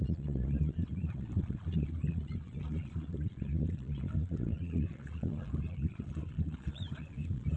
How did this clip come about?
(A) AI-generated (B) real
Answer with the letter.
A